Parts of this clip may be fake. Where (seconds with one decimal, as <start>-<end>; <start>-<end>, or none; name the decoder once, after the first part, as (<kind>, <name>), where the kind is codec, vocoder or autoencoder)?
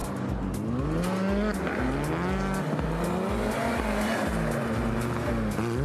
none